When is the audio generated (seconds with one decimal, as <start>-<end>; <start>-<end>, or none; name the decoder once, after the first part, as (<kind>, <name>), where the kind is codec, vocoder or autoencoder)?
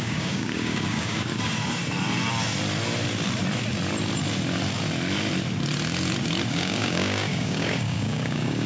0.0-1.3 (codec, DAC); 6.5-8.7